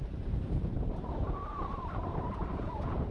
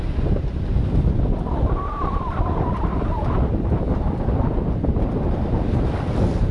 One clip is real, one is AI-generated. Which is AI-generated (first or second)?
first